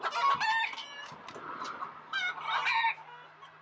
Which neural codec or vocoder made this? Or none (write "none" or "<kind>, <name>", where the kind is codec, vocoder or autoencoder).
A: none